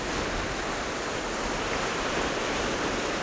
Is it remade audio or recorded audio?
recorded